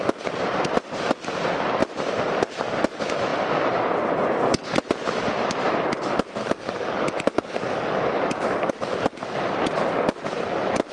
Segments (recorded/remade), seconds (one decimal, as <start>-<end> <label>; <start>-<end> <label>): 0.0-6.4 recorded; 6.4-8.7 remade; 8.7-10.9 recorded